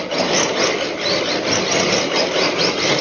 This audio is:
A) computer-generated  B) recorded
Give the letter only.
B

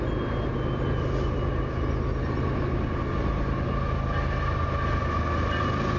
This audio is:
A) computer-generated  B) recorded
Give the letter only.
B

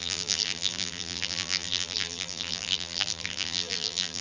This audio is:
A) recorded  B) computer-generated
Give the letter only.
B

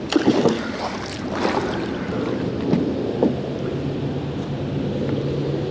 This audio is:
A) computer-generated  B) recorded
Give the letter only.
B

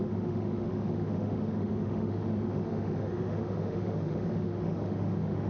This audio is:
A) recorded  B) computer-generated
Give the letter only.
B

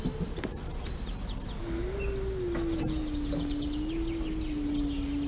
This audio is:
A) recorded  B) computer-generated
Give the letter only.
A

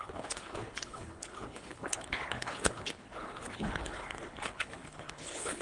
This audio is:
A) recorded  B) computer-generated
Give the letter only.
B